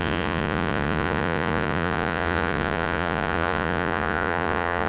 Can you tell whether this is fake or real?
fake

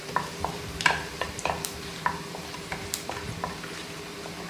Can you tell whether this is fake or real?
fake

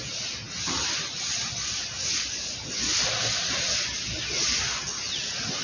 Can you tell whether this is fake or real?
real